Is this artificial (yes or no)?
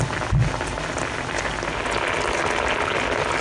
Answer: no